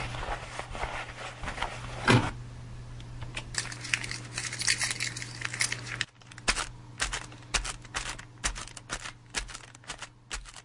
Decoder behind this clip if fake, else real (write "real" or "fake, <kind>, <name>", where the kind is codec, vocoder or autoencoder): real